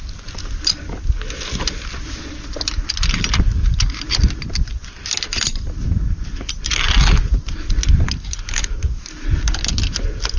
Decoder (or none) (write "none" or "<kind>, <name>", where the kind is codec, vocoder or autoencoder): none